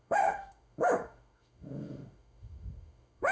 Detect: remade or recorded remade